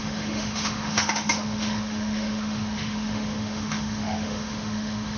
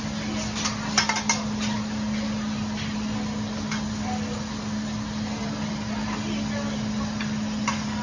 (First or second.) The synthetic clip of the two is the first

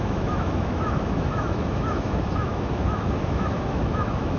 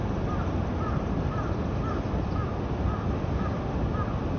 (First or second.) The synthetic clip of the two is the first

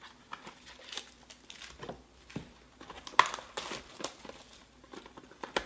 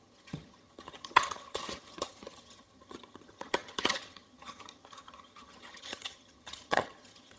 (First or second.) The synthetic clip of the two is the second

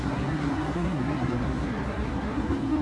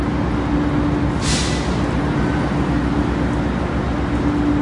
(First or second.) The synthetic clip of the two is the first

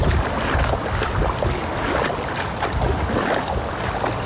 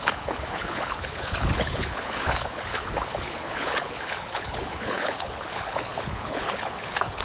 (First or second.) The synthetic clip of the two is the second